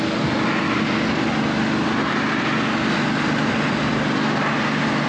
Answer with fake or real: real